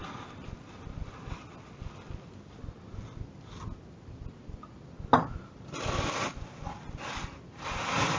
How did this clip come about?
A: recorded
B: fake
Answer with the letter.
A